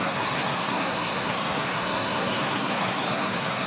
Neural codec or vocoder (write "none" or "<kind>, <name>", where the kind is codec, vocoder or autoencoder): codec, SNAC